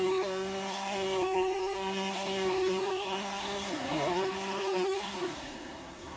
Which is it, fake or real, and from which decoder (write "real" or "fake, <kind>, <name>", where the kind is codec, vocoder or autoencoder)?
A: fake, codec, SNAC